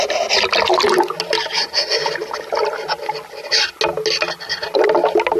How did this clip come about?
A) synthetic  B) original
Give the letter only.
B